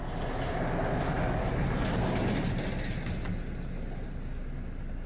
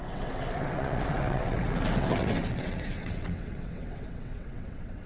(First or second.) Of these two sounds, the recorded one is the first